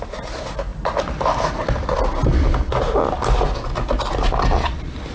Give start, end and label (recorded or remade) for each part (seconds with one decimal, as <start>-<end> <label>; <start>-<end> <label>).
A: 0.0-5.1 recorded